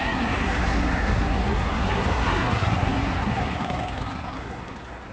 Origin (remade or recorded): remade